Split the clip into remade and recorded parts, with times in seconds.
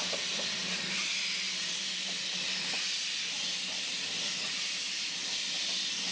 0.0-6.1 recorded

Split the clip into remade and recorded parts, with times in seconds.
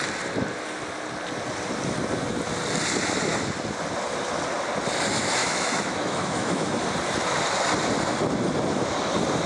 0.0-5.4 recorded; 5.4-6.8 remade; 6.8-9.5 recorded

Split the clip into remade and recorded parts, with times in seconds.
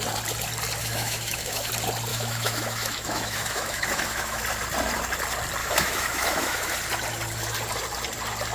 0.0-0.8 recorded; 0.8-1.7 remade; 1.7-2.1 recorded; 2.1-4.4 remade; 4.4-5.6 recorded; 5.6-6.7 remade; 6.7-8.5 recorded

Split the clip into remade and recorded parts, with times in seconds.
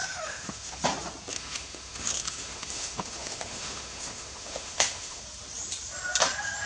0.0-0.8 remade; 0.8-1.3 recorded; 1.3-5.2 remade; 5.2-6.7 recorded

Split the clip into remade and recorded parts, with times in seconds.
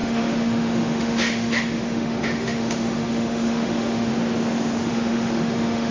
0.0-4.1 remade; 4.1-4.9 recorded; 4.9-5.9 remade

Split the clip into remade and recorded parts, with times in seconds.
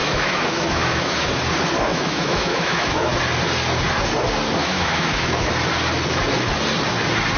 0.0-1.3 remade; 1.3-1.9 recorded; 1.9-3.1 remade; 3.1-4.6 recorded; 4.6-5.5 remade; 5.5-7.4 recorded